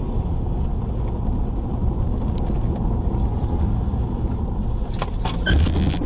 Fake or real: real